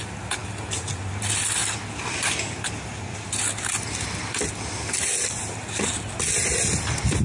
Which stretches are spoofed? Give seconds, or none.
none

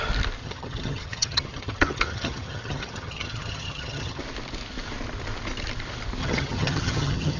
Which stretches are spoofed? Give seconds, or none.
0.4-4.2 (vocoder, HiFi-GAN); 6.2-7.4

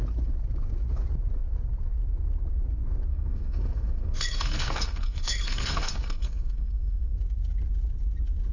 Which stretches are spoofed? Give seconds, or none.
3.1-7.2 (codec, SNAC)

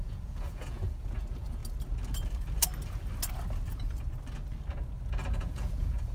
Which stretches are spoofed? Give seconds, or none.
0.0-1.6 (vocoder, Vocos); 5.3-6.1

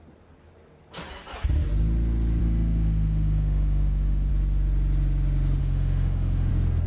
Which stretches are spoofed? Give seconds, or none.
2.4-4.3 (autoencoder, DAC-VAE); 5.6-6.5

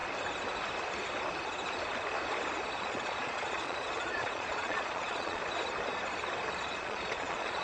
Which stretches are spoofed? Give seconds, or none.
2.8-5.4 (vocoder, Vocos); 6.6-7.6

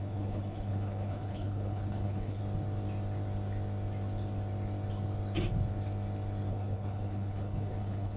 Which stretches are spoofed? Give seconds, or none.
0.0-2.4 (codec, HILCodec); 6.5-8.2

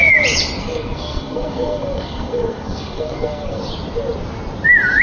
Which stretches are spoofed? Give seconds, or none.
0.6-3.6 (codec, SNAC)